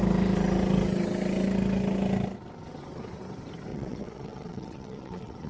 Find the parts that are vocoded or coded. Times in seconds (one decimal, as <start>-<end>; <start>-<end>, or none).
3.7-5.5